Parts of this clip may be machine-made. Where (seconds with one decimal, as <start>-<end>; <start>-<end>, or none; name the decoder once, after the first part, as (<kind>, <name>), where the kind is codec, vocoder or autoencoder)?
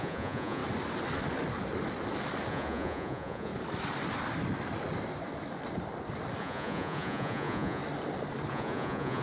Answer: 0.0-0.6 (vocoder, Vocos); 2.5-3.5; 6.4-7.8; 8.5-9.2